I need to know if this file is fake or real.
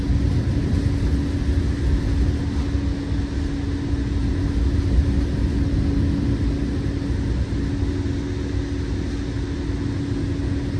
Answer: real